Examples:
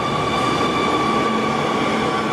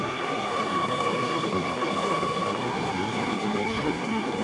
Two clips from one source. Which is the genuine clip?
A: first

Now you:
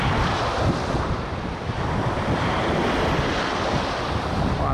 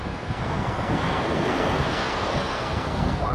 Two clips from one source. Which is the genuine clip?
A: first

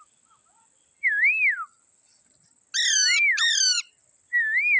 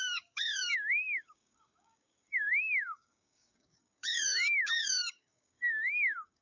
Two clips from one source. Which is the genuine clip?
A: first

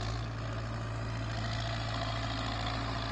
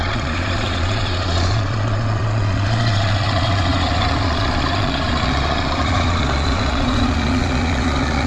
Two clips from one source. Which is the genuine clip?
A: first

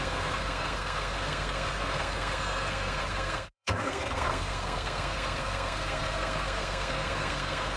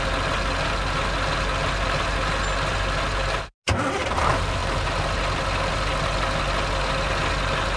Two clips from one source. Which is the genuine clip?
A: second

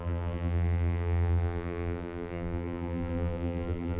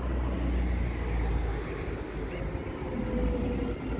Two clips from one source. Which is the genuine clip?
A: second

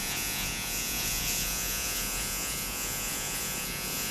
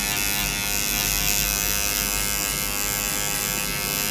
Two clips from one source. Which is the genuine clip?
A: second